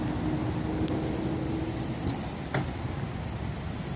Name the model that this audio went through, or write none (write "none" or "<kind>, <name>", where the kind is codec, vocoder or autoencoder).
vocoder, BigVGAN v2